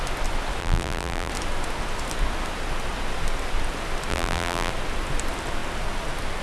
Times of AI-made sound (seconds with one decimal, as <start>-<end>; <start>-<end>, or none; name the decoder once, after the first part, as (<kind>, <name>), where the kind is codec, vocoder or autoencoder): 0.6-1.3 (vocoder, BigVGAN v2); 4.1-4.7